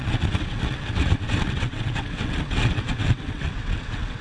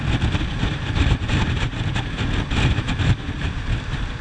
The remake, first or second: first